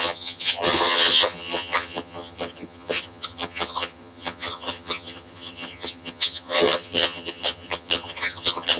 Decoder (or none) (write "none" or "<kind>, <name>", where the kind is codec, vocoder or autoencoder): vocoder, HiFi-GAN